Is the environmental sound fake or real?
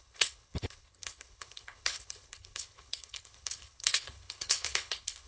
fake